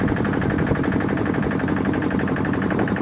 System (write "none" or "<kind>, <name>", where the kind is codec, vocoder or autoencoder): vocoder, BigVGAN v2